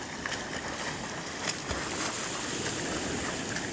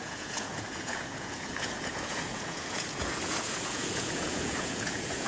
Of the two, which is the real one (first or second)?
first